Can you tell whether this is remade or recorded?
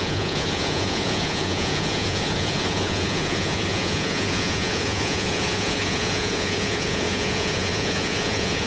remade